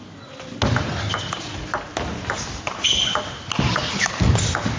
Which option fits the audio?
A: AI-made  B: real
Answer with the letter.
B